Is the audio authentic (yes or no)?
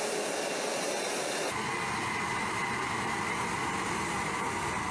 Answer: yes